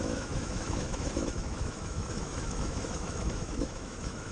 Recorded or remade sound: remade